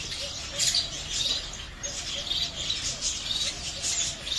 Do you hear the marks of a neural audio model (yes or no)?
no